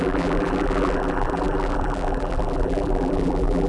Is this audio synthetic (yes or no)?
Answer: yes